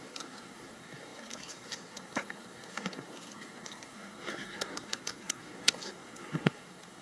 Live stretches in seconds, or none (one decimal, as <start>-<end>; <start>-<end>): none